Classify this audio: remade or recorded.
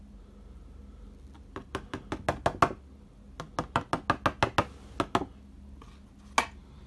recorded